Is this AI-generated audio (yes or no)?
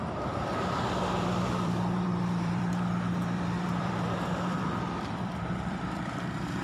yes